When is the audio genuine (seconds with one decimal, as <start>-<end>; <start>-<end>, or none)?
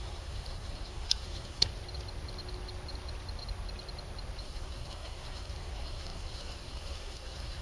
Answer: 1.7-4.4